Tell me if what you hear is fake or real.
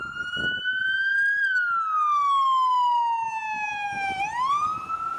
real